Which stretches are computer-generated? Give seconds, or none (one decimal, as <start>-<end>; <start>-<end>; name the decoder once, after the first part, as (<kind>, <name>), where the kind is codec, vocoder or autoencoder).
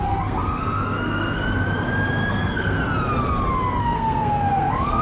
0.0-1.4 (codec, SNAC); 2.3-2.8; 3.8-5.0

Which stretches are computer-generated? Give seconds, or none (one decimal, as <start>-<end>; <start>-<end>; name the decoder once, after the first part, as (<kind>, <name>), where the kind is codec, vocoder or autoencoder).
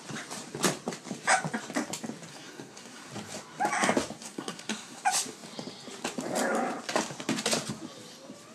2.3-3.1 (codec, SNAC); 4.2-5.0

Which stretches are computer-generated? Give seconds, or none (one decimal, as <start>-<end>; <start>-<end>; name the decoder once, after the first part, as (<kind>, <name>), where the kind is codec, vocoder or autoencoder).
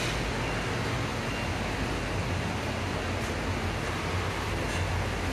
none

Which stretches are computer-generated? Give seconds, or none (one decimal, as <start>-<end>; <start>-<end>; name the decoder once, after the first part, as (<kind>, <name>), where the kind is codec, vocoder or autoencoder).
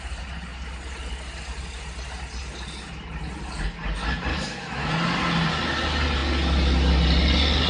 4.3-4.9 (autoencoder, DAC-VAE)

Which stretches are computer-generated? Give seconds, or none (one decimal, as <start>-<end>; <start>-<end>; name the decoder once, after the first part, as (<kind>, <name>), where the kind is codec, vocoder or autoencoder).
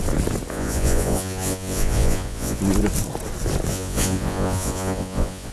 0.5-2.6 (vocoder, Vocos); 3.7-5.5